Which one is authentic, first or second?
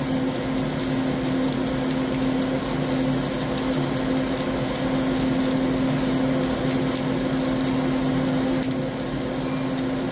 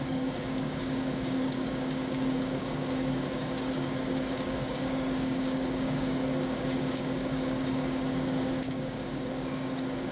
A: first